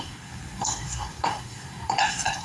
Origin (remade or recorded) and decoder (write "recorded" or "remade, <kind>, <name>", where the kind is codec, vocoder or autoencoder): remade, codec, SNAC